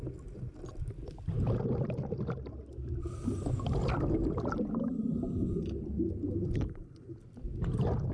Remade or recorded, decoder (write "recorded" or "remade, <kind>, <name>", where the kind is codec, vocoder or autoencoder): recorded